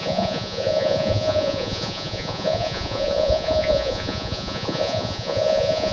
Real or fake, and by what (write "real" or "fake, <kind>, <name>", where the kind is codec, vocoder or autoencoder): fake, vocoder, Vocos